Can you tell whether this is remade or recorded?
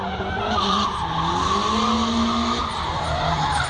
recorded